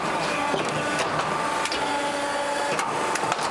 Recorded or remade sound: recorded